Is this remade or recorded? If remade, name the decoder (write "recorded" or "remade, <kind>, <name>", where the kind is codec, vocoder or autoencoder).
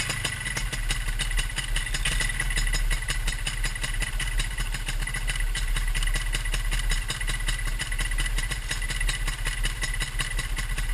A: recorded